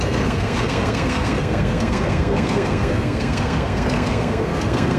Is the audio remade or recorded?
remade